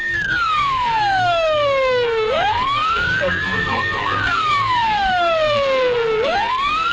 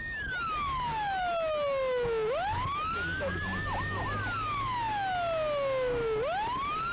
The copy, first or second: first